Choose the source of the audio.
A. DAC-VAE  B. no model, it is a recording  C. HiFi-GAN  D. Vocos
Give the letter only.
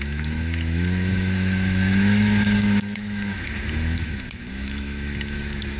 A